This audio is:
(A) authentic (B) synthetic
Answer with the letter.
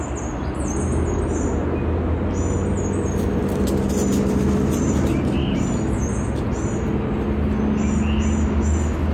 A